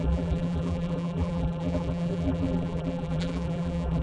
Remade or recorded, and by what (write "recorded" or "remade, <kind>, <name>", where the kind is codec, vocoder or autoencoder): remade, vocoder, BigVGAN v2